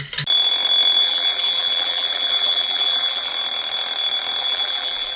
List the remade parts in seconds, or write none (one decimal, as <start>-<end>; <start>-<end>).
1.0-3.3; 4.4-5.2